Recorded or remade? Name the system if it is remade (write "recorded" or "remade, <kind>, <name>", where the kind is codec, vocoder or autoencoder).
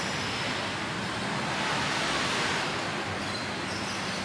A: recorded